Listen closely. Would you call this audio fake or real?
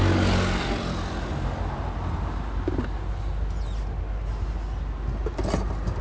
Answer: real